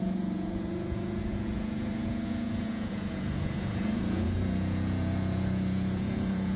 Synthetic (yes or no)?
yes